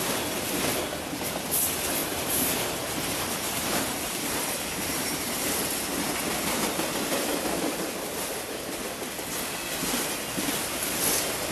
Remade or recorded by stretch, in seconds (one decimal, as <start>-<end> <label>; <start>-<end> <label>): 0.0-2.0 recorded; 2.0-5.6 remade; 5.6-11.5 recorded